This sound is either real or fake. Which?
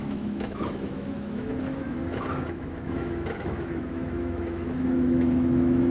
fake